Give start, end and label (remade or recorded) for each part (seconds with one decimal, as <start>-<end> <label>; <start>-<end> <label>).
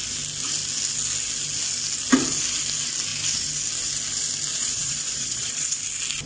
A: 0.0-4.5 recorded; 4.5-5.8 remade; 5.8-6.3 recorded